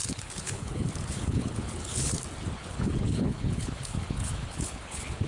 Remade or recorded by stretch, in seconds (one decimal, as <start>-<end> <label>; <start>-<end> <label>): 0.0-2.2 remade; 2.2-2.6 recorded; 2.6-5.3 remade